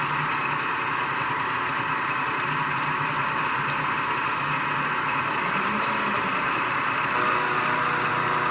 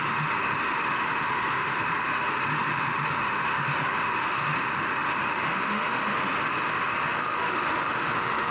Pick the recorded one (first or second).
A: first